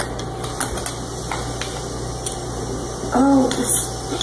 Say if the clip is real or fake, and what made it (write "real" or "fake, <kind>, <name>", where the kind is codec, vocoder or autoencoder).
real